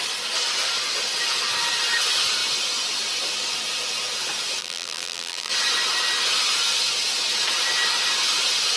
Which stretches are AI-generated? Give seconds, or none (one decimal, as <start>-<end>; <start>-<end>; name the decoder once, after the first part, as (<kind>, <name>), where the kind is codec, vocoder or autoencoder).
4.6-5.5 (vocoder, BigVGAN v2)